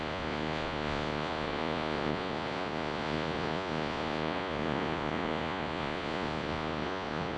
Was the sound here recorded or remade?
remade